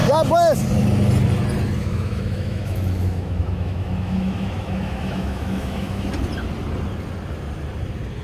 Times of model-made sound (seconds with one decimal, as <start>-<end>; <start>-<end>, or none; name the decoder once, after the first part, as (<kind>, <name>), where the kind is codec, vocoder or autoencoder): 1.8-6.1 (autoencoder, DAC-VAE)